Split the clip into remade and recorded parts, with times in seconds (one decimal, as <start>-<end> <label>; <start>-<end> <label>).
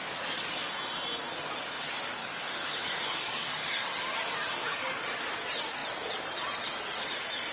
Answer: 0.0-2.2 recorded; 2.2-5.3 remade; 5.3-7.5 recorded